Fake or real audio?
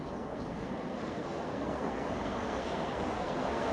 fake